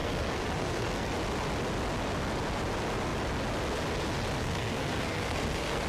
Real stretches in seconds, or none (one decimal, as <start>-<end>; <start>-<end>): 1.1-4.4